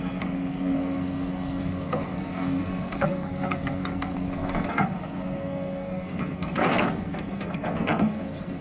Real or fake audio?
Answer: fake